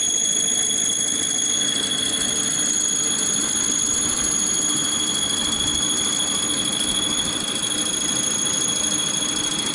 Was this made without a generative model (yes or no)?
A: yes